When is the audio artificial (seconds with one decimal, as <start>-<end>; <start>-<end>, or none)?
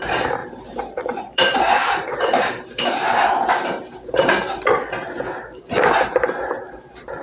0.4-4.7